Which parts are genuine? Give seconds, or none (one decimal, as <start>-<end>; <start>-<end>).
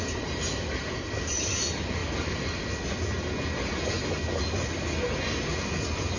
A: 0.0-6.2